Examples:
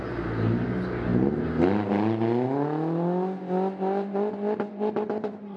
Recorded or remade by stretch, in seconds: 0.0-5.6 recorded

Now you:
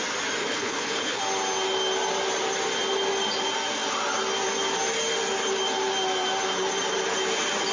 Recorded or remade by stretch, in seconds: 0.0-0.4 recorded; 0.4-1.2 remade; 1.2-7.7 recorded

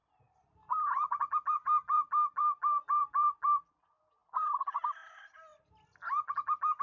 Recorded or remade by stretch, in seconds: 0.0-3.7 remade; 3.7-6.8 recorded

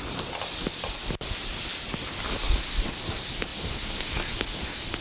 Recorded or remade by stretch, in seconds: 0.0-3.5 recorded; 3.5-4.0 remade; 4.0-5.0 recorded